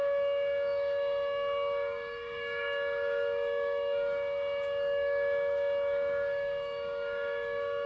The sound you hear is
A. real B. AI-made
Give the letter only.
B